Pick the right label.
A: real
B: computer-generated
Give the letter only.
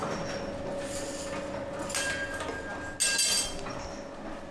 A